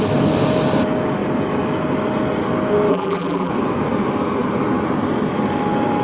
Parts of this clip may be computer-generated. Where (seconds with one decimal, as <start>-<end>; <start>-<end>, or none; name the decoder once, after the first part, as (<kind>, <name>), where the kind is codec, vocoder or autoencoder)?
2.9-3.5 (vocoder, BigVGAN v2)